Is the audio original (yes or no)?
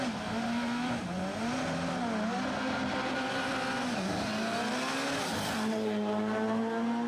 yes